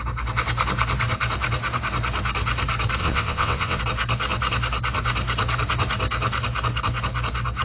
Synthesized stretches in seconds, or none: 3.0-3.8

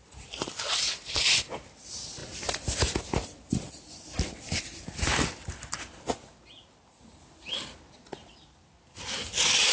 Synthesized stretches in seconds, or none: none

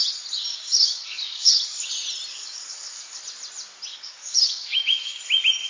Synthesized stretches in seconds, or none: 0.5-1.9; 2.3-3.2; 3.9-5.2

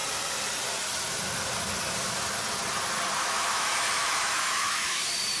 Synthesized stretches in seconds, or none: 3.2-5.0

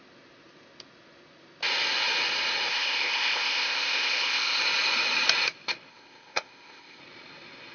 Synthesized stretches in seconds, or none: 2.7-4.6; 5.9-7.0

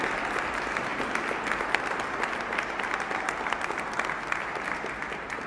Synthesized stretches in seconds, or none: none

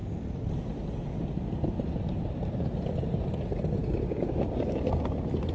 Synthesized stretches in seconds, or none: 3.8-4.8